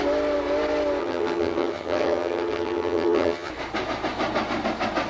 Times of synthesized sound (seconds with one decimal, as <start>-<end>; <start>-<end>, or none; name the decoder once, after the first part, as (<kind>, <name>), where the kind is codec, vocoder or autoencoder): 1.0-3.5 (vocoder, HiFi-GAN)